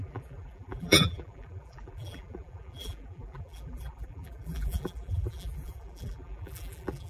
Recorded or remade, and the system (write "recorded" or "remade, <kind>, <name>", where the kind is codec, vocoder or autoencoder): remade, vocoder, BigVGAN v2